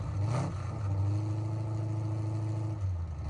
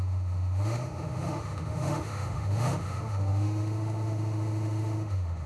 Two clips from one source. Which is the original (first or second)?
first